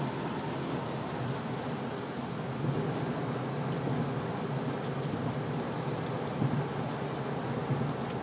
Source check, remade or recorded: recorded